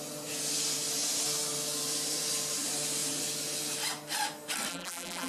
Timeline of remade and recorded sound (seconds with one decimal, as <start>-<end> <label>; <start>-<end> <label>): 0.0-4.7 recorded; 4.7-5.3 remade